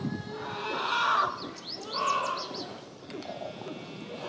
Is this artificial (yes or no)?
no